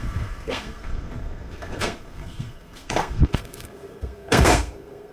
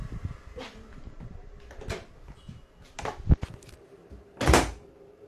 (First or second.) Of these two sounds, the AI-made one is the first